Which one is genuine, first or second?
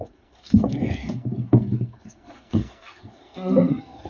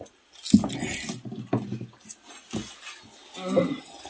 second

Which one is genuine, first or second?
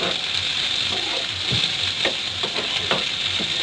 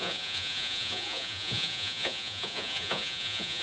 first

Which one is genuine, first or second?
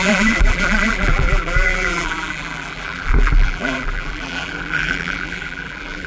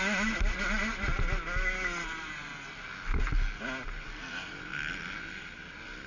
second